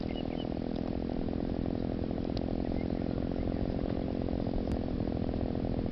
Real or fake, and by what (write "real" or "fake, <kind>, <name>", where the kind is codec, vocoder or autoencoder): fake, vocoder, BigVGAN v2